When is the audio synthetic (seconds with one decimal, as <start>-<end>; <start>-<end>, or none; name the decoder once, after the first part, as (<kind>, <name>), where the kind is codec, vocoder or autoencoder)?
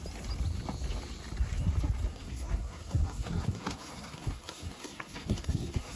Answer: 2.1-6.0 (codec, SNAC)